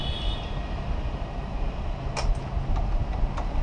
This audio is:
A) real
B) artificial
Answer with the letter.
A